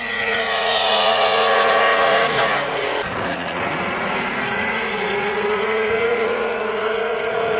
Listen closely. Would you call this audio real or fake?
fake